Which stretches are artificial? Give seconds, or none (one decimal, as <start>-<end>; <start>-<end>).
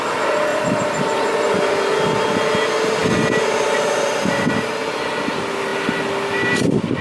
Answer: 0.5-1.7